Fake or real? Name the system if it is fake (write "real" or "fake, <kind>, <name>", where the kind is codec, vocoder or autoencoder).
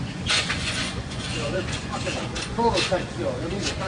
fake, vocoder, Vocos